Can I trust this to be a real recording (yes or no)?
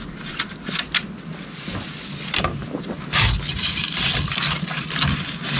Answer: yes